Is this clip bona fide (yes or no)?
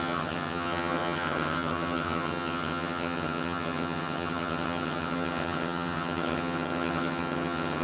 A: no